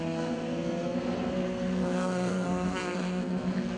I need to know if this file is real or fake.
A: fake